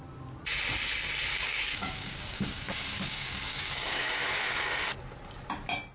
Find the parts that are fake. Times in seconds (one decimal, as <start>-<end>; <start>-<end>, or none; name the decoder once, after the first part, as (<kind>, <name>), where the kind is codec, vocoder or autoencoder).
1.3-4.8 (codec, DAC)